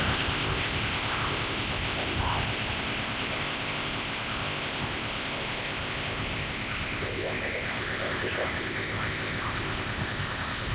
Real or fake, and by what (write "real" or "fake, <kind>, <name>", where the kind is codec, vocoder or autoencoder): fake, codec, ZipCodec